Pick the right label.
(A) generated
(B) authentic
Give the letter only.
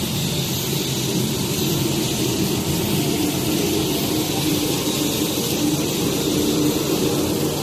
B